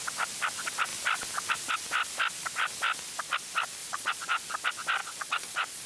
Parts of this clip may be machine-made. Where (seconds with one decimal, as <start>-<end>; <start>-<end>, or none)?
3.8-4.5; 5.0-5.9